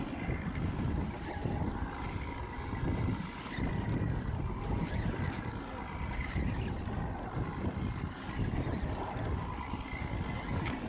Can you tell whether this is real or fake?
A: real